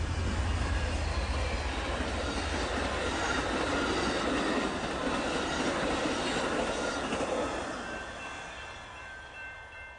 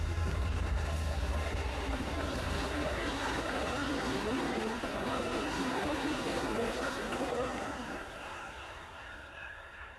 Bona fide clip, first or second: first